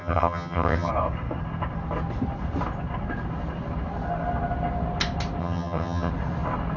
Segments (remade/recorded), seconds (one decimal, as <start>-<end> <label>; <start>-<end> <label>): 0.0-0.9 remade; 0.9-5.4 recorded; 5.4-6.1 remade; 6.1-6.8 recorded